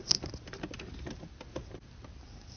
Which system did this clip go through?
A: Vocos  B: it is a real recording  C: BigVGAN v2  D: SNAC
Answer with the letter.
B